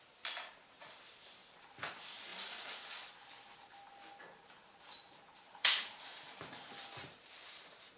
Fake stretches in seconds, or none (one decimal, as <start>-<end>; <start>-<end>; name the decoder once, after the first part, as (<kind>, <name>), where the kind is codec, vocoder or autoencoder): 0.0-1.4 (vocoder, BigVGAN v2); 1.9-2.3; 4.2-8.0